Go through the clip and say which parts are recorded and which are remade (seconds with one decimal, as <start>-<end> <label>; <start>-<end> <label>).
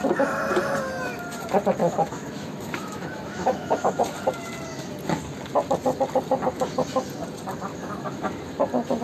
0.0-1.8 recorded; 1.8-4.0 remade; 4.0-7.7 recorded; 7.7-8.4 remade; 8.4-9.0 recorded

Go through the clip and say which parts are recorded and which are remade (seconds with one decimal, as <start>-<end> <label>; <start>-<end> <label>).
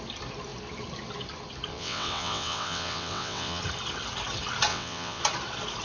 0.0-1.7 recorded; 1.7-3.6 remade; 3.6-4.7 recorded; 4.7-5.2 remade; 5.2-5.8 recorded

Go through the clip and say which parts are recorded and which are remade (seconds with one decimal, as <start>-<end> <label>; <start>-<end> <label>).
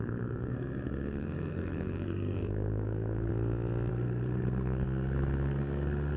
0.0-3.3 remade; 3.3-3.9 recorded; 3.9-6.2 remade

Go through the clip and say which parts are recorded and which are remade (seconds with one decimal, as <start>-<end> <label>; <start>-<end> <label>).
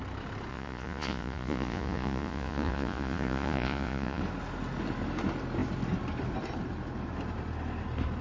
0.0-0.5 recorded; 0.5-4.2 remade; 4.2-8.2 recorded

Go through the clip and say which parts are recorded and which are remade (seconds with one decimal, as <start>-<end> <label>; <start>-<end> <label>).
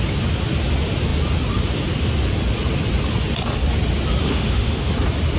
0.0-4.2 recorded; 4.2-4.9 remade; 4.9-5.4 recorded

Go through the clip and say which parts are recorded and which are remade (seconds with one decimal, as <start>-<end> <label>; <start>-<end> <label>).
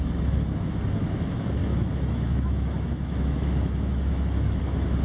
0.0-5.0 remade